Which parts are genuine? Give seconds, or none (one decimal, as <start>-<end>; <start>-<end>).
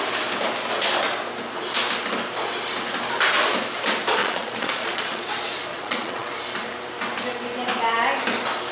0.0-4.2; 5.3-5.7; 6.3-8.7